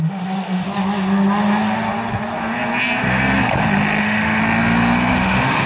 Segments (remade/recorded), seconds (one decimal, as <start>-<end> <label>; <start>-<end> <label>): 0.0-0.6 remade; 0.6-4.0 recorded; 4.0-4.4 remade; 4.4-5.1 recorded; 5.1-5.7 remade